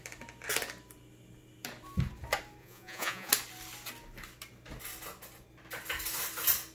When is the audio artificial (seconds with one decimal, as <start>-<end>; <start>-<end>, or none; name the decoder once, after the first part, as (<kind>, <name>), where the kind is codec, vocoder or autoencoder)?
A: 2.6-3.3 (vocoder, Vocos)